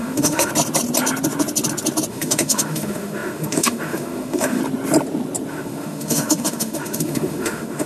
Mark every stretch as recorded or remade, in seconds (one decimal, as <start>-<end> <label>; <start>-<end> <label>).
0.0-0.5 remade; 0.5-2.1 recorded; 2.1-4.6 remade; 4.6-5.5 recorded; 5.5-7.9 remade

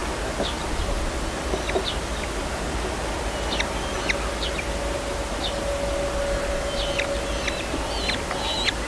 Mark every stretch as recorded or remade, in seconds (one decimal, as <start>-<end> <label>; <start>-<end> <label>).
0.0-8.9 recorded

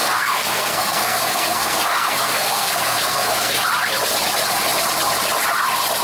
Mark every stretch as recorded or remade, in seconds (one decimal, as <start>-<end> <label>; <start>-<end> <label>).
0.0-3.6 remade; 3.6-6.0 recorded

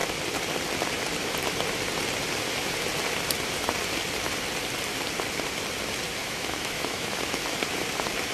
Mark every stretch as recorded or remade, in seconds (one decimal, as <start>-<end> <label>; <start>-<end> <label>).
0.0-6.2 recorded; 6.2-7.4 remade; 7.4-8.3 recorded

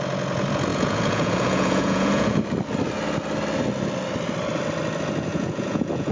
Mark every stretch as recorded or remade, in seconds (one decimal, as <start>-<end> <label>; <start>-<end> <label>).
0.0-0.7 recorded; 0.7-2.4 remade; 2.4-5.3 recorded; 5.3-6.1 remade

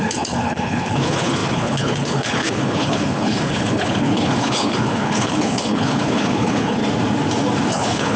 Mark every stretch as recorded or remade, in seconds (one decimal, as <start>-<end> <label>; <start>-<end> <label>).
0.0-6.8 remade; 6.8-7.7 recorded; 7.7-8.2 remade